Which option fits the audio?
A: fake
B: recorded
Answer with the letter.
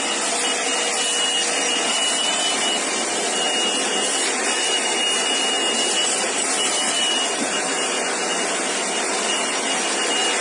B